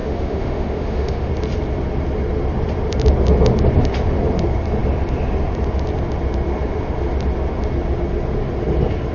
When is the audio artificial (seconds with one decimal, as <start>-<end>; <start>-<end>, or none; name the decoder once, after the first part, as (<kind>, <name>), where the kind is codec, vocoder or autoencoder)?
0.0-1.3 (autoencoder, DAC-VAE)